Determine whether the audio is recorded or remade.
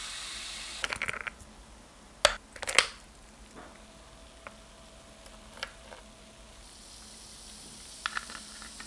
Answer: recorded